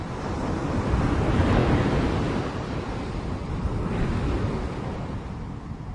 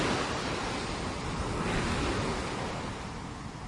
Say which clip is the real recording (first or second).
second